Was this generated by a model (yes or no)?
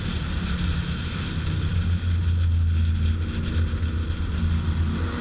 no